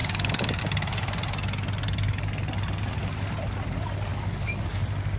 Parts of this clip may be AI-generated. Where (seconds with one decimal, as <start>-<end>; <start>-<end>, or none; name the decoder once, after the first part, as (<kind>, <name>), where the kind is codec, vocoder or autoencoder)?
0.0-0.6 (codec, DAC); 4.1-4.6